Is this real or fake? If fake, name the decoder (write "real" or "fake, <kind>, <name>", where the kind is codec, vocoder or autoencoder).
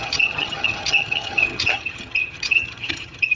fake, vocoder, HiFi-GAN